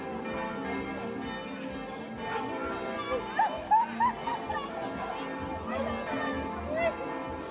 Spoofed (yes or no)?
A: no